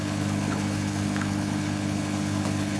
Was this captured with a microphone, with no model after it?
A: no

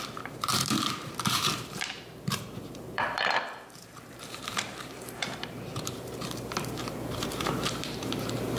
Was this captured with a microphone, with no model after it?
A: no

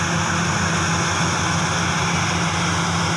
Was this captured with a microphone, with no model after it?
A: yes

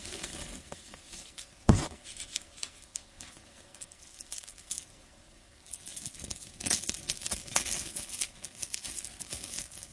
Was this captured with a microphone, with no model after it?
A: no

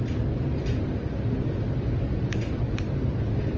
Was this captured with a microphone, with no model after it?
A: yes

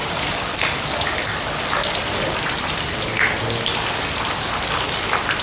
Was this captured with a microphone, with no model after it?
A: yes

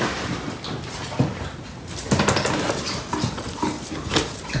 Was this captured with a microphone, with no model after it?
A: yes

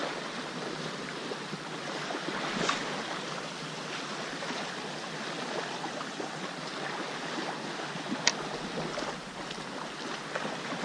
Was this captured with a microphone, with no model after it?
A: yes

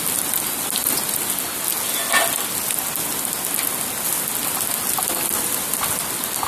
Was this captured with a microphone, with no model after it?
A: yes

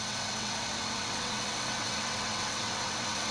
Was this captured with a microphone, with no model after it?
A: no